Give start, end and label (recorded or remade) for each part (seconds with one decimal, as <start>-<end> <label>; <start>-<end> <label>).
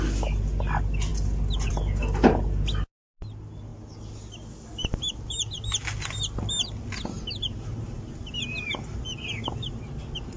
0.0-10.4 recorded